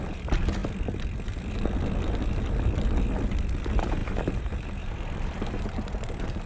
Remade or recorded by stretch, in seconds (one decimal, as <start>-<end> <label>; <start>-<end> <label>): 0.0-0.6 remade; 0.6-3.6 recorded; 3.6-6.5 remade